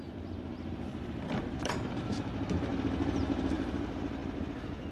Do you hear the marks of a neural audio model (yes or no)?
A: yes